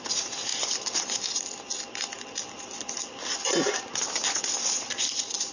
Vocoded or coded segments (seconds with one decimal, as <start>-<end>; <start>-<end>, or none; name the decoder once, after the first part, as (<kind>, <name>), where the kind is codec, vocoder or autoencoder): none